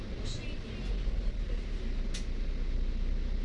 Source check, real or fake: real